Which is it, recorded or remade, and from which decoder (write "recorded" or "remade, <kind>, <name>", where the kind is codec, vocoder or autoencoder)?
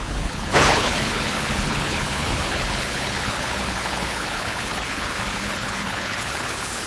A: remade, codec, HILCodec